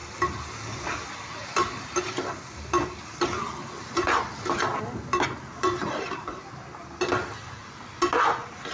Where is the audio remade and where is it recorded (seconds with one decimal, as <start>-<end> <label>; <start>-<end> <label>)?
0.0-5.5 recorded; 5.5-7.0 remade; 7.0-8.7 recorded